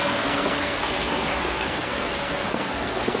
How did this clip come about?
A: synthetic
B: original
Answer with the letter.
A